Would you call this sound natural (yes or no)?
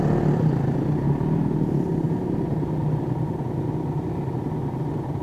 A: yes